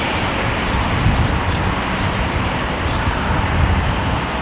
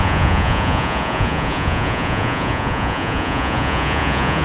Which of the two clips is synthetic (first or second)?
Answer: second